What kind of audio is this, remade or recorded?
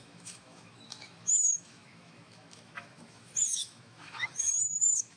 remade